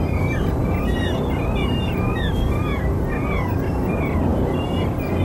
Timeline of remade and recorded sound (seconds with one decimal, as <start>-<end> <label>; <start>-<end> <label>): 0.0-0.6 remade; 0.6-3.7 recorded; 3.7-4.3 remade; 4.3-5.2 recorded